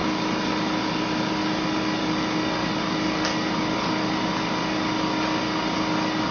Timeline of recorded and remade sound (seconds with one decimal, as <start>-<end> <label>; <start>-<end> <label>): 0.0-6.3 recorded